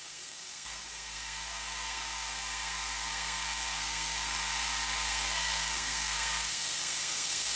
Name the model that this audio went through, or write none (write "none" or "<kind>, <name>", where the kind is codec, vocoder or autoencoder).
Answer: codec, SNAC